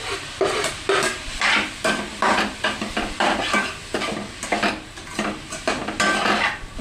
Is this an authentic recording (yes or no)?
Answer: no